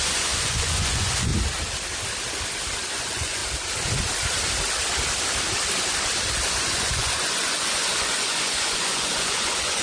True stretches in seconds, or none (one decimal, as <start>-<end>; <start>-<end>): 1.3-2.9; 3.4-6.5